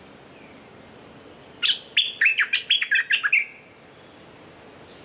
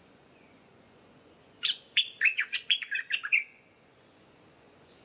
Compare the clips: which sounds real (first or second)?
first